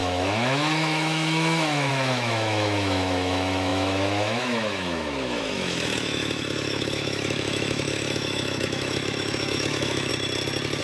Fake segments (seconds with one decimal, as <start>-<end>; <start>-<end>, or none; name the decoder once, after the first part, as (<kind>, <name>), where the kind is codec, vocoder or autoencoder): 0.0-10.1 (autoencoder, DAC-VAE)